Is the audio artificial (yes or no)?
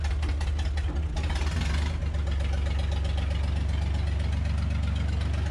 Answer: no